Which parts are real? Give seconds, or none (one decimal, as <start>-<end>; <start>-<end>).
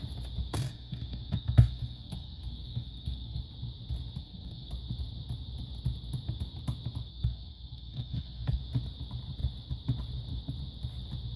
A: 0.0-0.5; 3.4-4.2; 4.7-7.1; 8.6-11.4